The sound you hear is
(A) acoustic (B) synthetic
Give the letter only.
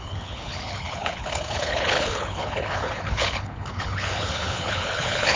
B